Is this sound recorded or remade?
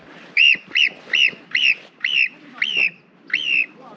recorded